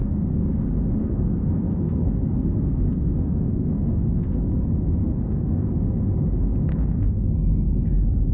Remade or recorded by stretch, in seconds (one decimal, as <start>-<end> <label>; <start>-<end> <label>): 0.0-0.6 remade; 0.6-1.0 recorded; 1.0-4.5 remade; 4.5-5.0 recorded; 5.0-5.7 remade; 5.7-6.7 recorded; 6.7-7.2 remade; 7.2-8.3 recorded